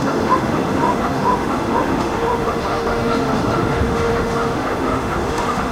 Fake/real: fake